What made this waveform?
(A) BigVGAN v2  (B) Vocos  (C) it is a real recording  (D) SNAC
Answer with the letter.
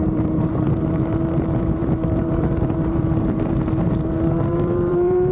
A